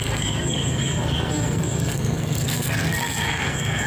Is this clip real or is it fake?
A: fake